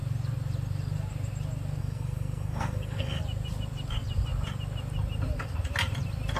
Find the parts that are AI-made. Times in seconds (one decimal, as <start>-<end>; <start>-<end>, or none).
1.8-3.2